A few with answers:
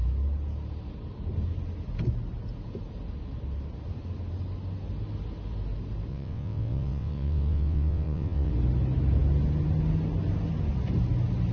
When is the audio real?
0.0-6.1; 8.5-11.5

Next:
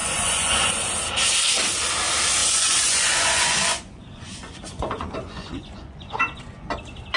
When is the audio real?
0.9-2.4; 6.7-7.2

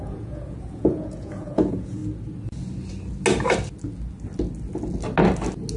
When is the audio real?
2.0-5.8